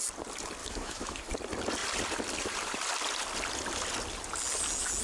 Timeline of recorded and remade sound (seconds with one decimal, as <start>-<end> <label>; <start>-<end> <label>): 0.0-0.6 recorded; 0.6-1.3 remade; 1.3-5.0 recorded